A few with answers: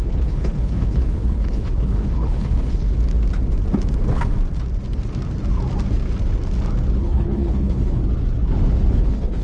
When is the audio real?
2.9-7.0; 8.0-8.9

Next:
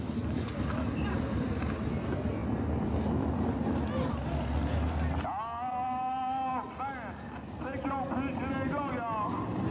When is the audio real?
0.0-9.7

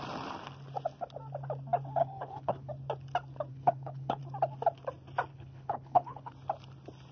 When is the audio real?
0.0-2.0; 2.7-3.5; 4.2-5.3; 6.3-7.1

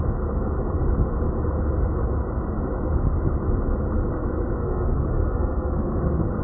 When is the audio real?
0.0-4.6; 6.0-6.4

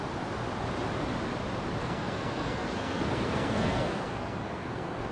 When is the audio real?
0.0-1.8

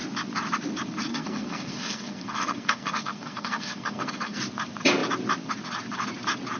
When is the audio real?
0.0-1.1; 4.4-6.6